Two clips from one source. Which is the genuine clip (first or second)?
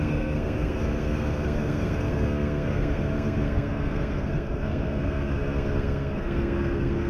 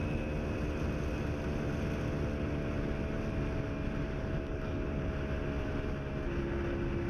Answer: second